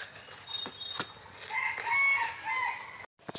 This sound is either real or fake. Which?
real